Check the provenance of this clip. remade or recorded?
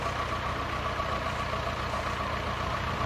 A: recorded